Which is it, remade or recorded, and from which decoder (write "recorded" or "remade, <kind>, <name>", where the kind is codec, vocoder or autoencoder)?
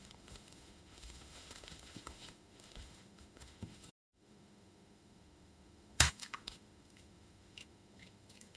remade, autoencoder, DAC-VAE